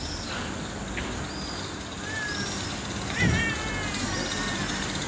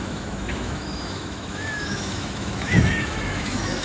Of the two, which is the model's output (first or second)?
second